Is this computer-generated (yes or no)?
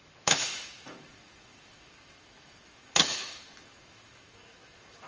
yes